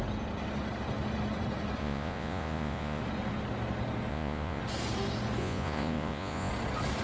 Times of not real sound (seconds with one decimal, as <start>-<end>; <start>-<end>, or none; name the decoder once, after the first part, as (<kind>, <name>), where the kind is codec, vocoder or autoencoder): 1.8-3.0 (vocoder, Vocos); 4.1-4.6; 5.4-6.5